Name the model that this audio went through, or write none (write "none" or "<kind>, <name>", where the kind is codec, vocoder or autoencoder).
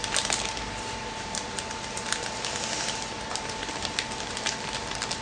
none